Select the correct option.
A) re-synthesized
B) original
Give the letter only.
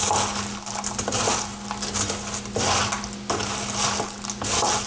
B